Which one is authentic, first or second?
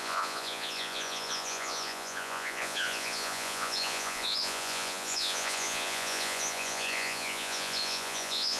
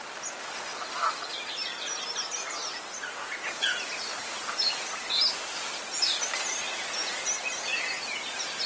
second